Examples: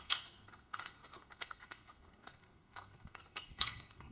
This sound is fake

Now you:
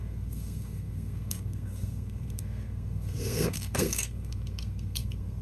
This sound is fake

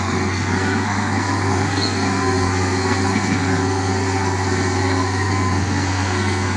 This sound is fake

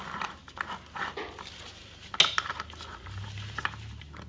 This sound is real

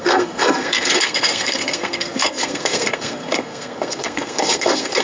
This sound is fake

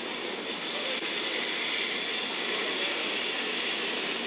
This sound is real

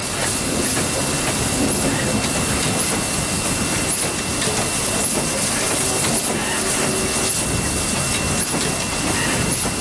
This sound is real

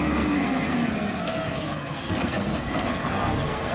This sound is fake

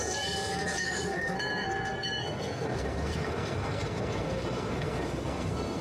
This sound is fake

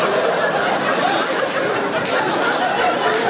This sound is real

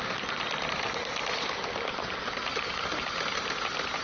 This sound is real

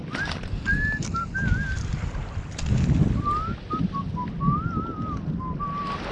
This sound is real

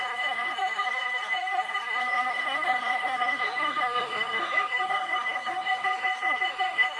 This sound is fake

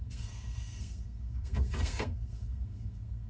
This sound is fake